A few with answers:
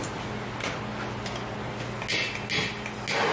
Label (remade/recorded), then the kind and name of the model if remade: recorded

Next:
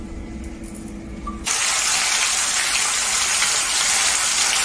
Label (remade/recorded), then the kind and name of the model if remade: recorded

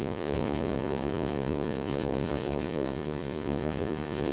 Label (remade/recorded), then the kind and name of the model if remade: remade, vocoder, Vocos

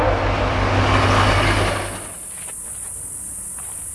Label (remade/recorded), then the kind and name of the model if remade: recorded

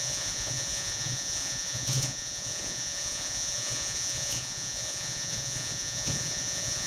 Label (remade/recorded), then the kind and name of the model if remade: remade, vocoder, Vocos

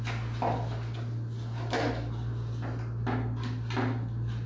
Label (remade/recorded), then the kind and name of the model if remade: recorded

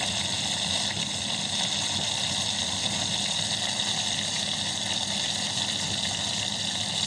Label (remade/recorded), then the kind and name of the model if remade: recorded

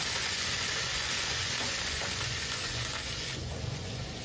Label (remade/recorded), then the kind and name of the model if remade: remade, vocoder, Vocos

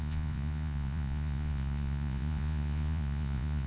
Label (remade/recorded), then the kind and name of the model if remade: remade, vocoder, Vocos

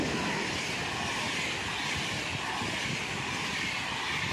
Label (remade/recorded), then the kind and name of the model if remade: recorded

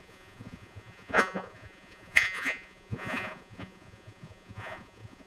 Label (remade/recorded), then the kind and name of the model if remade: remade, vocoder, Vocos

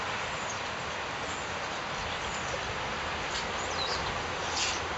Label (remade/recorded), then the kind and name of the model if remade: recorded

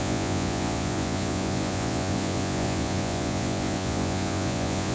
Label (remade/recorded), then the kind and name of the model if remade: remade, vocoder, Vocos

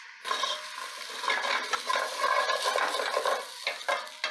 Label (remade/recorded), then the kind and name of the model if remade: recorded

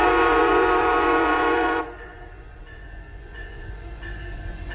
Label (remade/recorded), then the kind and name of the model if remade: remade, vocoder, Vocos